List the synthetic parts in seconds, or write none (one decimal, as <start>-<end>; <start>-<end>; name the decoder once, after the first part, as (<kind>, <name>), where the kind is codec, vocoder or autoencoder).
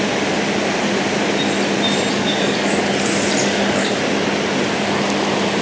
2.1-2.8 (codec, DAC); 3.4-4.0